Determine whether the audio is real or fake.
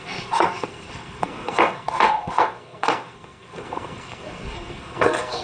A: fake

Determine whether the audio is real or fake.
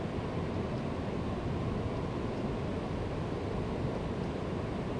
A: real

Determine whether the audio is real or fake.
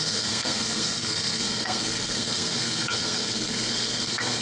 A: fake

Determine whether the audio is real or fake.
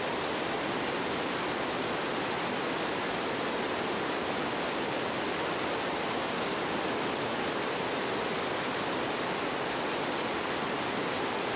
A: real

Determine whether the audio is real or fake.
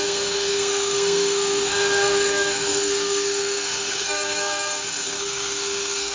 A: fake